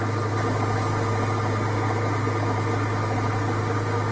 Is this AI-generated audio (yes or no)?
no